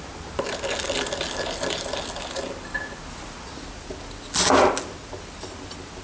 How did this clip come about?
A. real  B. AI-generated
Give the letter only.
A